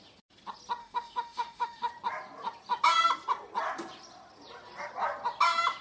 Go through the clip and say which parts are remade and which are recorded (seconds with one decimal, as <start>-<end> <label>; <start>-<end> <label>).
0.0-0.8 recorded; 0.8-1.9 remade; 1.9-5.8 recorded